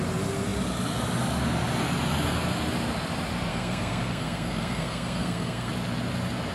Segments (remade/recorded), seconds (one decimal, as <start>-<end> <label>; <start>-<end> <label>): 0.0-3.5 recorded; 3.5-5.7 remade; 5.7-6.5 recorded